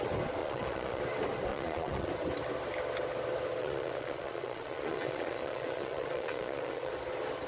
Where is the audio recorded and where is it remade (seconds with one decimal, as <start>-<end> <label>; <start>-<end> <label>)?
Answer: 0.0-0.4 recorded; 0.4-1.0 remade; 1.0-1.5 recorded; 1.5-2.1 remade; 2.1-3.6 recorded; 3.6-6.9 remade; 6.9-7.5 recorded